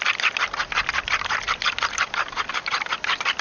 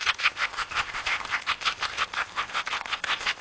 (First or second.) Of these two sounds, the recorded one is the first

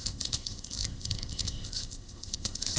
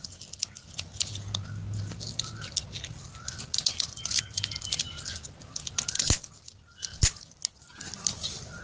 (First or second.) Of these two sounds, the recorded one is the second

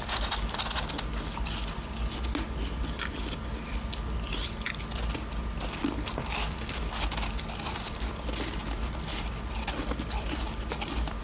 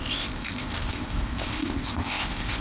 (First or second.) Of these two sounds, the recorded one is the first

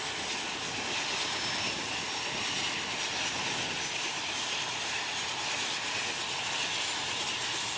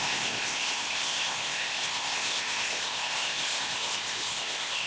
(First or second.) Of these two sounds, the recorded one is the first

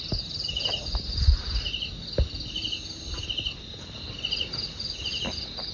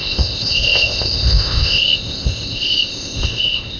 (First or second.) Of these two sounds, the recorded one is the first